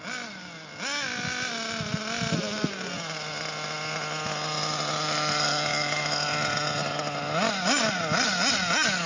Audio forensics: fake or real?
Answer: real